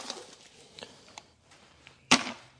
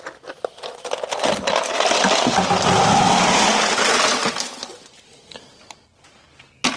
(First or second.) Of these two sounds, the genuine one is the second